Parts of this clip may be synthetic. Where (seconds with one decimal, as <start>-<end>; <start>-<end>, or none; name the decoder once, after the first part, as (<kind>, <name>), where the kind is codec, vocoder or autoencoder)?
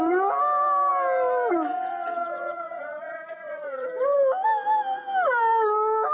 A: 1.9-3.9 (vocoder, Vocos)